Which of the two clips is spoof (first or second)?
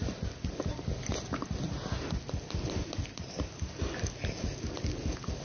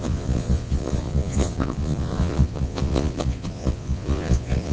second